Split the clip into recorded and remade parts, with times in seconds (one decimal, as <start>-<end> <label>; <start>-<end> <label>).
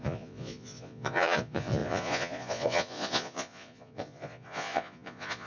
0.0-5.5 remade